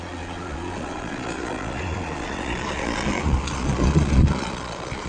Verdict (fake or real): fake